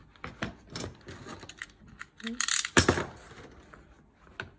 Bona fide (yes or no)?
yes